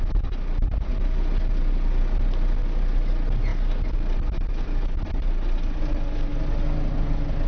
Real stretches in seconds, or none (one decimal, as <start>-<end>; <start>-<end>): 0.0-7.5